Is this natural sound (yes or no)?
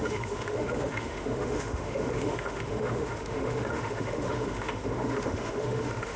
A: no